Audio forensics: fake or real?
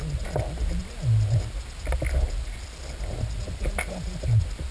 real